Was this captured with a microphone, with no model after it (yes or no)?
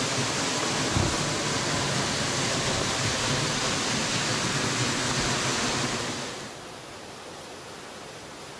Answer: yes